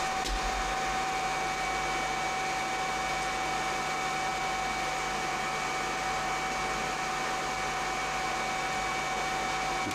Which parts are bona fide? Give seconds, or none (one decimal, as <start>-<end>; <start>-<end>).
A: 0.0-9.9